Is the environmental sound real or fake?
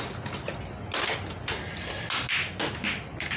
real